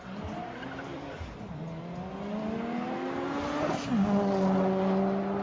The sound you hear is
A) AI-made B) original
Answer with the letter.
B